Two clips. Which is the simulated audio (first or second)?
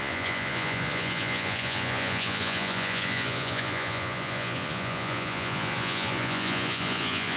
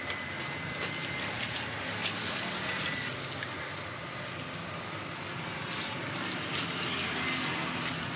first